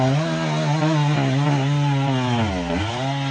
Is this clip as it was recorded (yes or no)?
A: yes